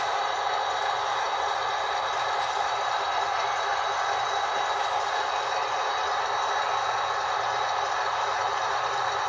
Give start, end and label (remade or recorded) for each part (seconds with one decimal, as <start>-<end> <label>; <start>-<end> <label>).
0.0-9.3 recorded